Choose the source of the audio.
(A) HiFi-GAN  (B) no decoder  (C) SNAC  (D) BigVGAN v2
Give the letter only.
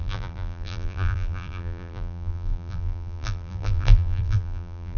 D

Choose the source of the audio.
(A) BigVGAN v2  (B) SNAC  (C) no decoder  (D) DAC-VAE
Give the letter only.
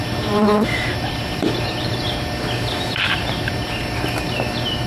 A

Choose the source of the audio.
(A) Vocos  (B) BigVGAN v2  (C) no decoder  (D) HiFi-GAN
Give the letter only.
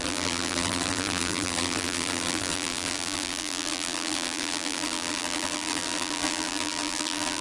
B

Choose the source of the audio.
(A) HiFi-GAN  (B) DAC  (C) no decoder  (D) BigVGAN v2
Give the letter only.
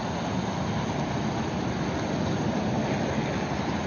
C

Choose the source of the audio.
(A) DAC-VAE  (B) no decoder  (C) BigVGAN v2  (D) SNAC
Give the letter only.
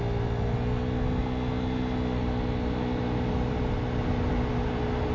B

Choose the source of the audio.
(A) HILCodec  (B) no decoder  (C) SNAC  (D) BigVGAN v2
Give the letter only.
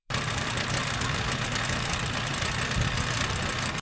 D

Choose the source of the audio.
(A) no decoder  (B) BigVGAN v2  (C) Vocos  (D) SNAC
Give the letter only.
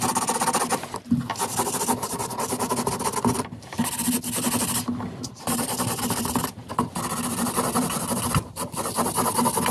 B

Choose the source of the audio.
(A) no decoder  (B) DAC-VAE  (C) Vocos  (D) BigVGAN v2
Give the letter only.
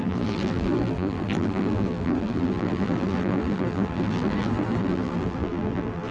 D